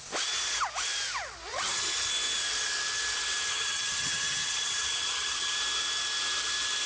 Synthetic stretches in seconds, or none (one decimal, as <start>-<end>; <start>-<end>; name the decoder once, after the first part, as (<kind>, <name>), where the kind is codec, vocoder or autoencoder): 1.5-2.1 (vocoder, HiFi-GAN); 3.5-5.5